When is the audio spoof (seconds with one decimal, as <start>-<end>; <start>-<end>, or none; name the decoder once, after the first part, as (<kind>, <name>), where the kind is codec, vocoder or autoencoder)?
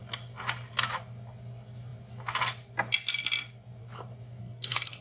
4.4-5.0 (codec, SNAC)